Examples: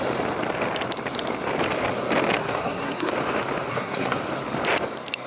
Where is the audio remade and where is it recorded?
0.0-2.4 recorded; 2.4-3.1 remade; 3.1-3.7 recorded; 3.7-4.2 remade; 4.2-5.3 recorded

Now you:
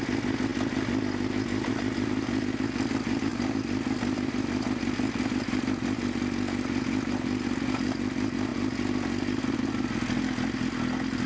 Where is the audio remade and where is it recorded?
0.0-11.3 recorded

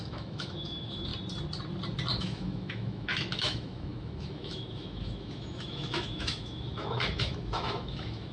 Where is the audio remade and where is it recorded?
0.0-1.1 remade; 1.1-2.2 recorded; 2.2-8.3 remade

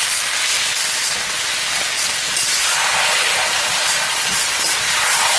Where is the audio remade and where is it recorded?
0.0-5.4 recorded

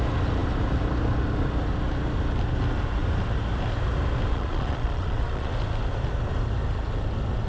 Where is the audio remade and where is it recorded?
0.0-4.3 recorded; 4.3-5.5 remade; 5.5-7.5 recorded

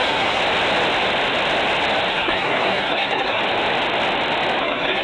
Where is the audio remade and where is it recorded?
0.0-0.4 remade; 0.4-2.1 recorded; 2.1-3.4 remade; 3.4-4.6 recorded; 4.6-5.0 remade